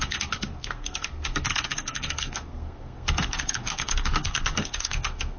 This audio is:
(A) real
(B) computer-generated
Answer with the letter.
B